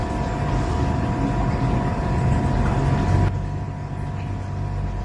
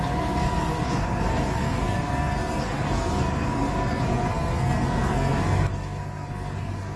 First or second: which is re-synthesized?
second